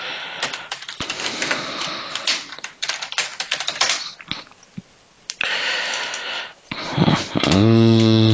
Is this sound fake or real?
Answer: real